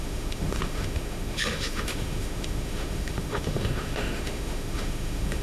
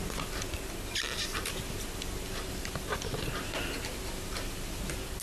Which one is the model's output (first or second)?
first